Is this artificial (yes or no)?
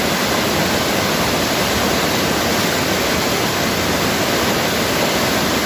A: no